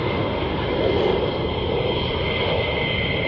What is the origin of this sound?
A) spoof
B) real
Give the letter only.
B